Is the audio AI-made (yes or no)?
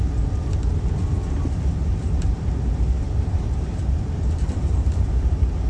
yes